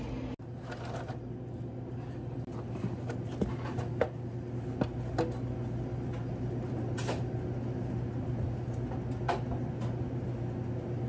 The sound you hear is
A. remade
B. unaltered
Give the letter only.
B